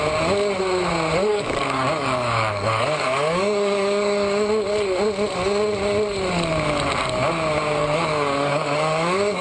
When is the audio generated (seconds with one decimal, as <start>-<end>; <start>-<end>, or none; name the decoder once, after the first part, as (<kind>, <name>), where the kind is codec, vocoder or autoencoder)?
1.3-4.5 (codec, DAC); 7.8-9.4